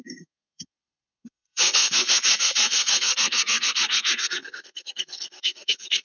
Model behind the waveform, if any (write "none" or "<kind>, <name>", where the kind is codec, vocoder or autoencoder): codec, SNAC